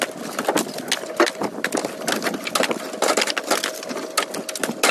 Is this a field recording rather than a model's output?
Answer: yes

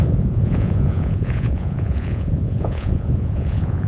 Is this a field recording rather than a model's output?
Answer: no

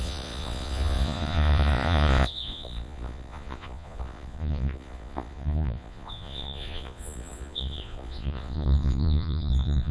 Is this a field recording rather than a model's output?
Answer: no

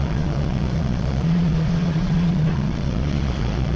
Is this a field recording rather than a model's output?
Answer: no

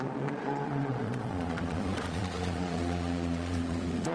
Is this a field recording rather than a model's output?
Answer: no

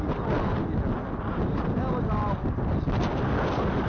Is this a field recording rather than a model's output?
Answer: yes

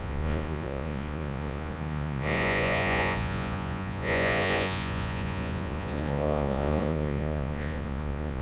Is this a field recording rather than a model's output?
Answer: no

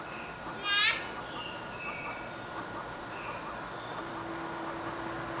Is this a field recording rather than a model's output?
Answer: yes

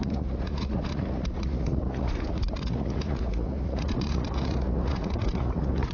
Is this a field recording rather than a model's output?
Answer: no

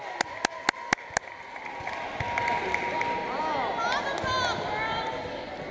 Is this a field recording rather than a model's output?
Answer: yes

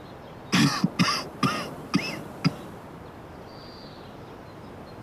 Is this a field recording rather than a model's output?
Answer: yes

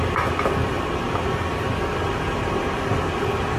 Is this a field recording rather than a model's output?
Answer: yes